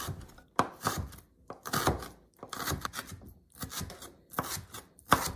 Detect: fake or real real